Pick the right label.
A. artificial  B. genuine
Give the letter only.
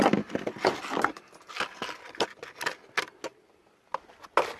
B